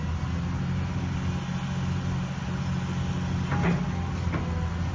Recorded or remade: recorded